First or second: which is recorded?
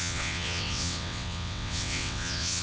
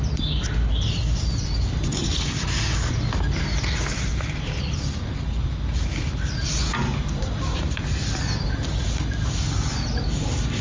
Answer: second